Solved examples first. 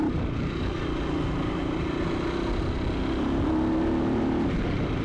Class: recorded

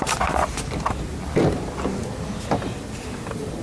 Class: recorded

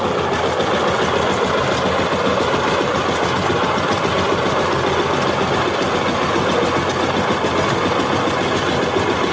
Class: recorded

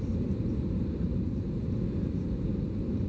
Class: remade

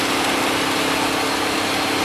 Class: recorded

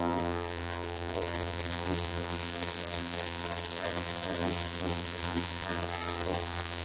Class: remade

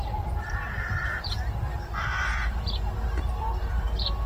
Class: remade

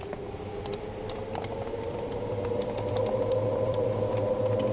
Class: remade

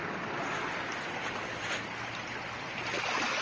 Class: recorded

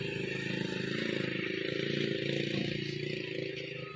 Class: recorded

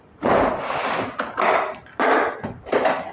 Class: remade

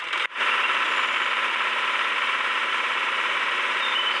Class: remade